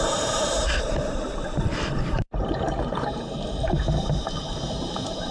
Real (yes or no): no